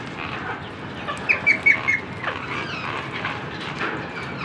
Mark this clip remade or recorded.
recorded